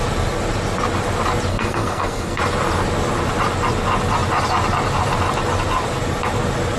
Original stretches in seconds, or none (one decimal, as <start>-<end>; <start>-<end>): 0.0-1.5; 2.4-6.8